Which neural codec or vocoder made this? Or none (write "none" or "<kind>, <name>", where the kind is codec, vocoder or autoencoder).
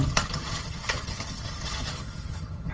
vocoder, HiFi-GAN